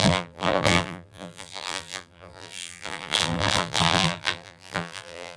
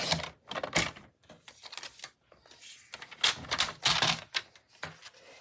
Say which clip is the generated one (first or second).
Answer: first